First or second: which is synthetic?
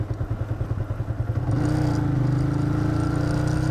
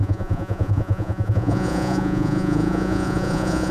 second